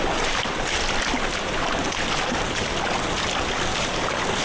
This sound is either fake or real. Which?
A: real